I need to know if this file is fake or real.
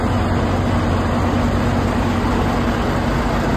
real